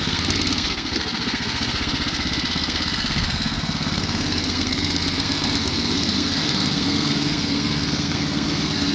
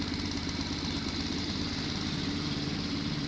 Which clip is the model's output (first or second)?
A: first